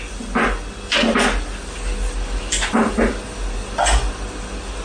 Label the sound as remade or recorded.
recorded